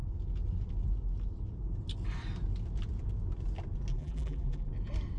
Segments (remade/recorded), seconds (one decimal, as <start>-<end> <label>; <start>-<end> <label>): 0.0-3.9 recorded; 3.9-4.7 remade; 4.7-5.2 recorded